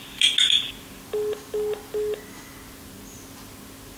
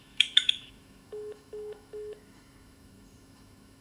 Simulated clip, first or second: second